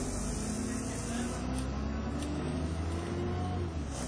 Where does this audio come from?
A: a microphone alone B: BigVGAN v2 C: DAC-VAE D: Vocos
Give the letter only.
A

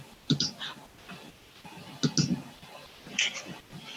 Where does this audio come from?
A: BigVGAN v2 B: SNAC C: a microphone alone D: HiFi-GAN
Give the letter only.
C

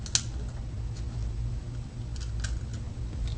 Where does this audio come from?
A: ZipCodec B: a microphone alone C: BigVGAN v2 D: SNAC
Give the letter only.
B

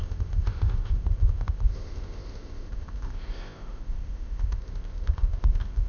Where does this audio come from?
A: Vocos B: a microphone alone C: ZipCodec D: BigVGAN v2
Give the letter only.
C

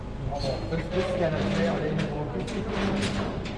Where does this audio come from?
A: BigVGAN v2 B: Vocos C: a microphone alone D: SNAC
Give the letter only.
C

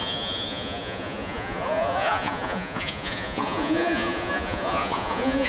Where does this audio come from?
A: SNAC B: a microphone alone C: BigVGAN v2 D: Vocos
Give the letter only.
D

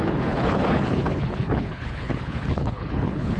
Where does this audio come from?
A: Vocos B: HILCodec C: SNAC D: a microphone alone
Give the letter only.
B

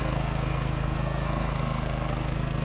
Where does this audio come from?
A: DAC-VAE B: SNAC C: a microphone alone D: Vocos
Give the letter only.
B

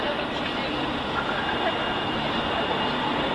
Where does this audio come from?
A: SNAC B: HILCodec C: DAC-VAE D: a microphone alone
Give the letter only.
D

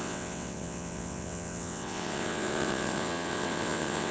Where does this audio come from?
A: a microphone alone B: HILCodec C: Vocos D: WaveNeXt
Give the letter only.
D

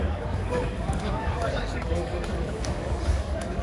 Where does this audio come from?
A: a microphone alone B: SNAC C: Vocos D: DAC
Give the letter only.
D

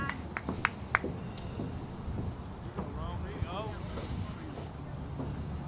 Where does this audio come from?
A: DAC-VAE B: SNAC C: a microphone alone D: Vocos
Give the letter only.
C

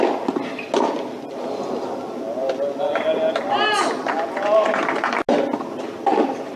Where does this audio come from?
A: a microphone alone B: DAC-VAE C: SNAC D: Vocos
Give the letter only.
A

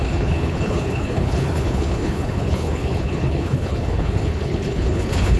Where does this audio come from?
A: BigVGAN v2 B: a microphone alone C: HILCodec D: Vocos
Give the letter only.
C